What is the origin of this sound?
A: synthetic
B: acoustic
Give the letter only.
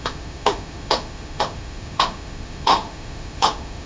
A